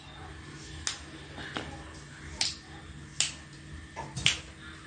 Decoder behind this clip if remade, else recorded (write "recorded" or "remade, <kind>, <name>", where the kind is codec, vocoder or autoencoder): recorded